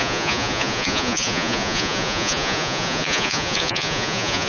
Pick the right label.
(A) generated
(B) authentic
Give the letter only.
A